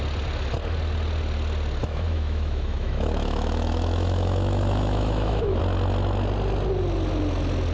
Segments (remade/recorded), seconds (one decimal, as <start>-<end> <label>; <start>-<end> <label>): 0.0-1.8 recorded; 1.8-5.6 remade; 5.6-7.7 recorded